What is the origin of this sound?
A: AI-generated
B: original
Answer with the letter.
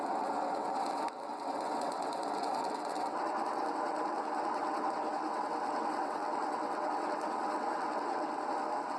A